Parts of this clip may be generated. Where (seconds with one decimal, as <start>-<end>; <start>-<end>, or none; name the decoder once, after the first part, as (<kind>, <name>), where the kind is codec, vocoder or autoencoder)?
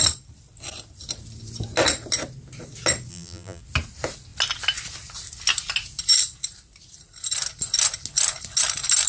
3.1-3.6 (vocoder, BigVGAN v2)